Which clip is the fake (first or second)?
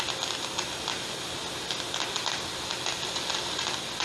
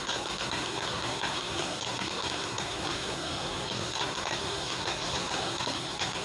second